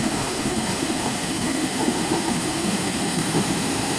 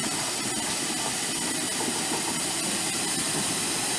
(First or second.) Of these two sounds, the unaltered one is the second